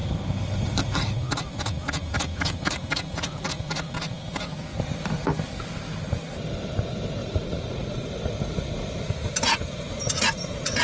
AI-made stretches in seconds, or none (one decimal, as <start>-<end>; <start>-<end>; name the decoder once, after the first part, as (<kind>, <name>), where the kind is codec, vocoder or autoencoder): 7.2-8.1 (vocoder, Vocos)